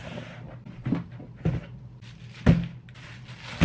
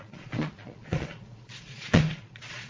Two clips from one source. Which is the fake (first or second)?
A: second